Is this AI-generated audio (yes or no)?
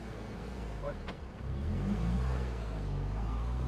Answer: yes